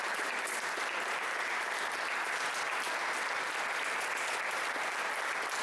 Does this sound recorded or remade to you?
recorded